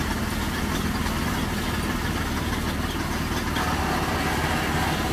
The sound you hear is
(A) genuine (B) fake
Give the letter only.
A